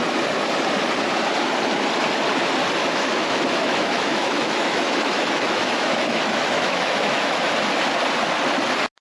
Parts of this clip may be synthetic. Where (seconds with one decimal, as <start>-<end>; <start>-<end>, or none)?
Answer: 2.8-7.4